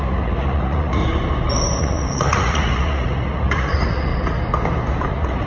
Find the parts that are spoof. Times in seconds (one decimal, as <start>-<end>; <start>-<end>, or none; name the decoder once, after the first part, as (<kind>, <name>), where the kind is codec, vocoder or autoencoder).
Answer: 0.0-1.0 (vocoder, Vocos); 1.8-4.1; 5.1-5.5

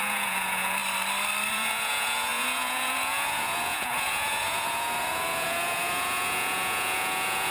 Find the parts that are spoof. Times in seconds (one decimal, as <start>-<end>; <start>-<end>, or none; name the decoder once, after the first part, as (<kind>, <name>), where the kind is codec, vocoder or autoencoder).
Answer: 0.0-0.8 (vocoder, Vocos); 1.5-7.5

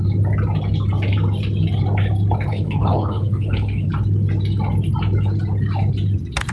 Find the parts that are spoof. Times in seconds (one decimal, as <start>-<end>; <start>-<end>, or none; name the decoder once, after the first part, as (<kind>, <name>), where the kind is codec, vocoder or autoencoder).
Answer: 2.5-3.9 (codec, HILCodec)

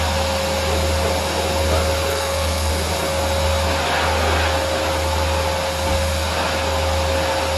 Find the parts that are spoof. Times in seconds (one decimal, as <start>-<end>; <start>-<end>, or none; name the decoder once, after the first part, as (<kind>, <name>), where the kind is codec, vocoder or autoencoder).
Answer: 2.1-2.7 (codec, SNAC)

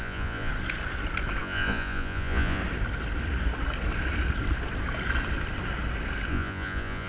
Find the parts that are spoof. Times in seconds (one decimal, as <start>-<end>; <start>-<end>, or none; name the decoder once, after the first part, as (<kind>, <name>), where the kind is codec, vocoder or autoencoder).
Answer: 0.0-0.5 (vocoder, Vocos); 1.4-2.6; 6.3-7.1

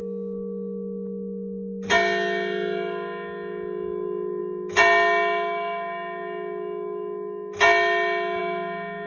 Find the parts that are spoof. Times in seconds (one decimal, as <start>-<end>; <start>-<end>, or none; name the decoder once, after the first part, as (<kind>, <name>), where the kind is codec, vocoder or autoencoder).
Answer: none

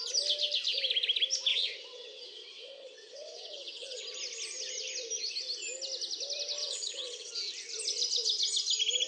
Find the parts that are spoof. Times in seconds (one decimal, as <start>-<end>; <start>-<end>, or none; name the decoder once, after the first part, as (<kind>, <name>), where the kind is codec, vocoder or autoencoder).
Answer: 1.5-4.0 (vocoder, WaveNeXt); 6.6-7.3